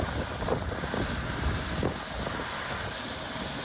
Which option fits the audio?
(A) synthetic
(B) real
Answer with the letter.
B